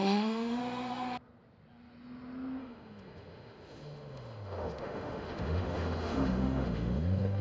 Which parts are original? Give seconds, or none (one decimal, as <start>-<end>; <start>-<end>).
0.6-2.6